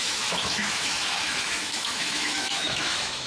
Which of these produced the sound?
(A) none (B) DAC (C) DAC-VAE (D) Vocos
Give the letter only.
C